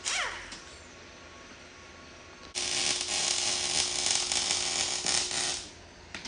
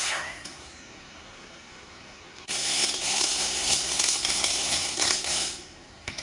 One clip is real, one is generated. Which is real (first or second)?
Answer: first